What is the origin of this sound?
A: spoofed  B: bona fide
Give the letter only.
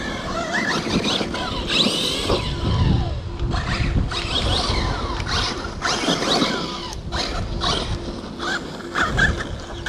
B